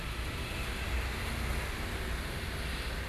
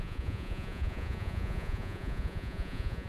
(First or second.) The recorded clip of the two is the first